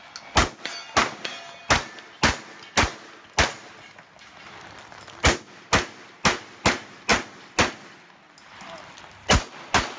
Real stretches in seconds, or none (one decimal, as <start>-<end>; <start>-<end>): 0.0-10.0